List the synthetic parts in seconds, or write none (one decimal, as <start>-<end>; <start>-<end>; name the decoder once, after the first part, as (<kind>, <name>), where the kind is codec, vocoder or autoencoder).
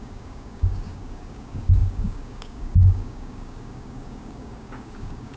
0.0-5.4 (codec, DAC)